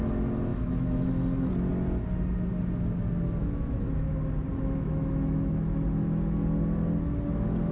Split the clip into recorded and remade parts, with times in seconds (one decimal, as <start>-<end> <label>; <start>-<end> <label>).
0.0-0.5 recorded; 0.5-1.1 remade; 1.1-3.4 recorded; 3.4-4.1 remade; 4.1-4.5 recorded; 4.5-5.5 remade; 5.5-7.7 recorded